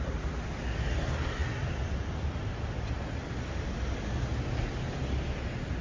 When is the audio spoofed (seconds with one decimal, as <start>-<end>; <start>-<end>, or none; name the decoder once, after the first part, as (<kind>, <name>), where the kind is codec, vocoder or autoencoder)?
none